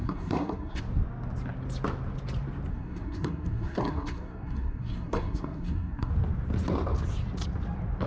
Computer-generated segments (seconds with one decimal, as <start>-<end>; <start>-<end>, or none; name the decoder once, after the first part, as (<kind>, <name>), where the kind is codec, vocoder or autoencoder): 0.0-0.8 (codec, SNAC); 2.7-6.1